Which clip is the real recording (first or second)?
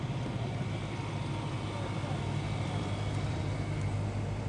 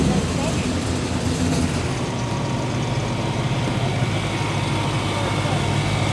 second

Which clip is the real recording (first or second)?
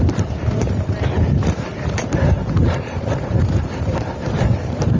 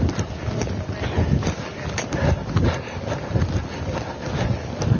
second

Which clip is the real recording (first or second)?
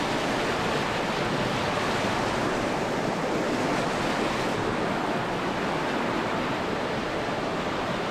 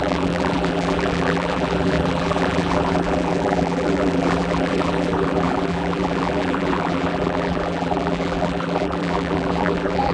first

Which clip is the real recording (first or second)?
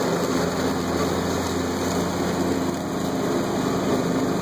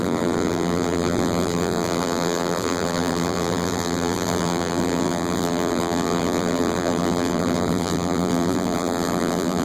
first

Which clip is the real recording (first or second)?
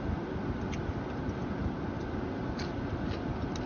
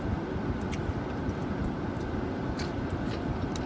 first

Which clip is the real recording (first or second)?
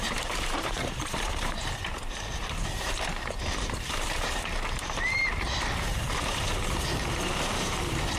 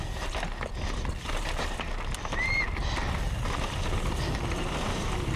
second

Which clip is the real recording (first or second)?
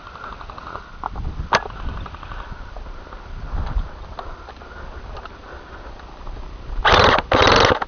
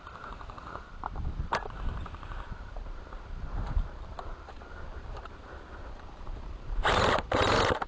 first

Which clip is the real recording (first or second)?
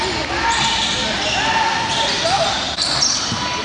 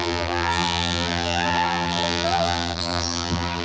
first